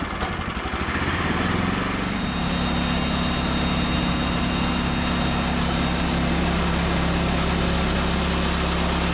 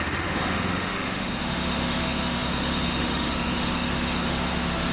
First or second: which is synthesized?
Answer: second